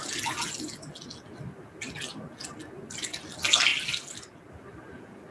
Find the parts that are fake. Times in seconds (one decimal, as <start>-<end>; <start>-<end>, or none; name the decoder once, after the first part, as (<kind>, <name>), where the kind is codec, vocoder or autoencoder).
none